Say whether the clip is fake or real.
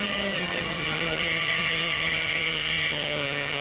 fake